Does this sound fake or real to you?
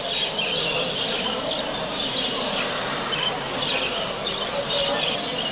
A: real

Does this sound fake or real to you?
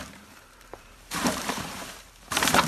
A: fake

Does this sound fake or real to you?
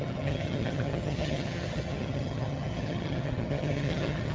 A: fake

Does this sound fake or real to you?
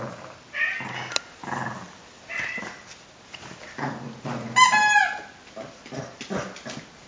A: real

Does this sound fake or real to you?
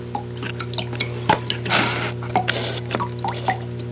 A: real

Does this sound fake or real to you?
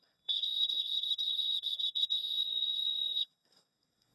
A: fake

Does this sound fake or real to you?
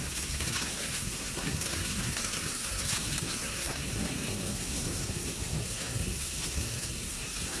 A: fake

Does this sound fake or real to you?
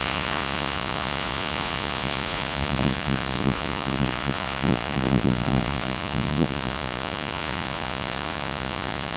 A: fake